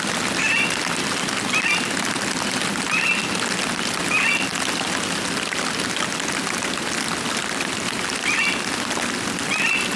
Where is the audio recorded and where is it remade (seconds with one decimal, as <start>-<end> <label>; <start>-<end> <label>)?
0.0-10.0 recorded